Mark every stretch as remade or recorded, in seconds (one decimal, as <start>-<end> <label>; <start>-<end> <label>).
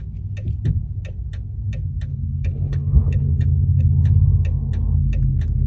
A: 0.0-2.1 recorded; 2.1-3.8 remade; 3.8-5.7 recorded